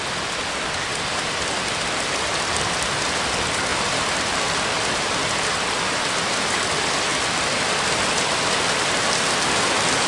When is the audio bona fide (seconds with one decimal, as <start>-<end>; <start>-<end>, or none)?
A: 0.0-0.9; 1.6-3.7; 4.4-7.1; 9.1-10.1